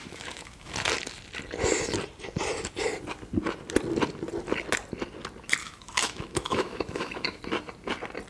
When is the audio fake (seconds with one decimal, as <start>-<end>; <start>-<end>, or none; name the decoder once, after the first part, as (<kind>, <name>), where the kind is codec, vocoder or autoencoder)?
0.0-0.7 (autoencoder, DAC-VAE); 5.6-7.4